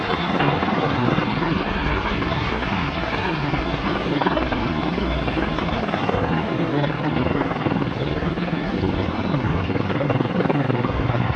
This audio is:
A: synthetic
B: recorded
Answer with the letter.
A